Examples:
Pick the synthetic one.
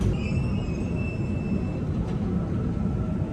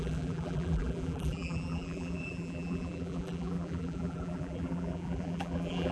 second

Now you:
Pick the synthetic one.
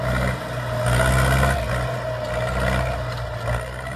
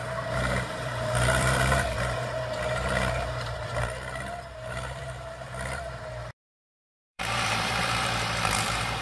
second